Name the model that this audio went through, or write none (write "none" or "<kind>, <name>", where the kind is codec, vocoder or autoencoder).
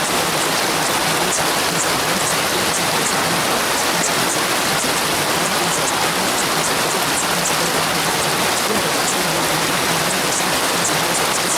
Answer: none